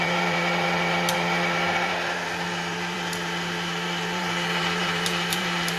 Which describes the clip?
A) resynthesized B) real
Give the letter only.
A